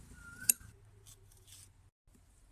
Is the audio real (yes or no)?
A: yes